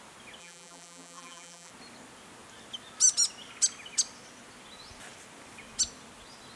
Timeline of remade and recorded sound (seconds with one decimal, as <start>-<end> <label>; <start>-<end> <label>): 0.0-0.4 recorded; 0.4-1.7 remade; 1.7-6.6 recorded